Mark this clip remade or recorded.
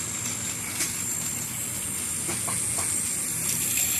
recorded